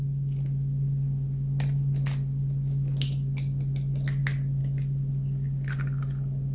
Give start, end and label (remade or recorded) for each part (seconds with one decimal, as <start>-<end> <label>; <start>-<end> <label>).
0.0-6.5 recorded